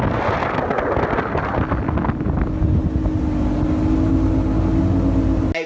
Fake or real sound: real